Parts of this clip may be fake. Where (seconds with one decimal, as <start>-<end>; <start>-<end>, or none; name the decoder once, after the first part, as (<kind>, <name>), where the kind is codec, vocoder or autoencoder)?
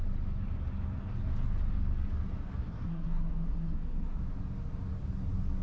2.6-4.2 (codec, SNAC)